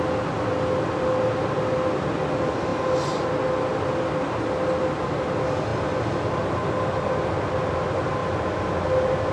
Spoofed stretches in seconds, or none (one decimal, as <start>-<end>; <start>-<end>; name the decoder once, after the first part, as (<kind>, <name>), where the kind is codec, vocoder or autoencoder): none